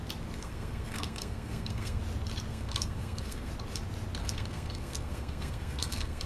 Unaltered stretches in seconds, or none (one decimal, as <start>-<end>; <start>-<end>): 0.0-0.4; 2.0-2.5; 3.5-4.2